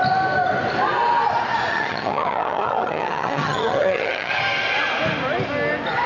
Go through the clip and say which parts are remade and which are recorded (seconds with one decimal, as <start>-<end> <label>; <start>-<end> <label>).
0.0-1.7 recorded; 1.7-4.3 remade; 4.3-6.1 recorded